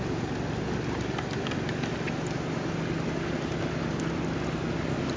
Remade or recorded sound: recorded